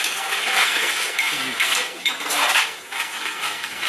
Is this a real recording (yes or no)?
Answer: no